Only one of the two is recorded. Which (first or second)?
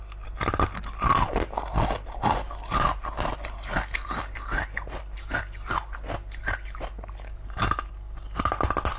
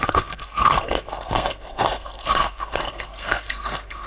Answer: first